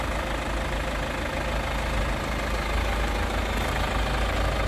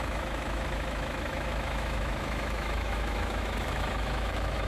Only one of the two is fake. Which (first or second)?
second